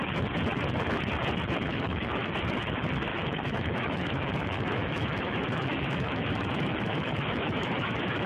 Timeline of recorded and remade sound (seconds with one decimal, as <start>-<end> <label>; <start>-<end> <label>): 0.0-1.7 recorded; 1.7-2.3 remade; 2.3-3.1 recorded; 3.1-8.3 remade